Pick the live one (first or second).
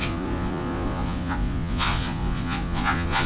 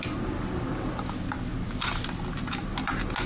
second